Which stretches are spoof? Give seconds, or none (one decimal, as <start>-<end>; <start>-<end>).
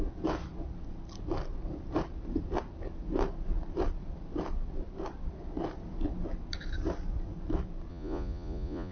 7.9-8.9